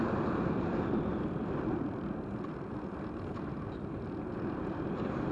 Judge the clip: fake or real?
real